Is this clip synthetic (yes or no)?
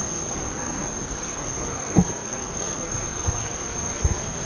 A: yes